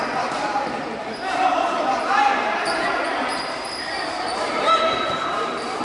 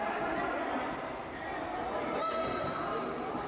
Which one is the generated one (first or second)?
first